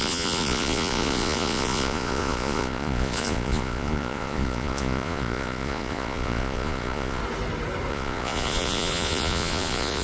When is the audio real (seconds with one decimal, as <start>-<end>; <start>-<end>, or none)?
7.2-7.9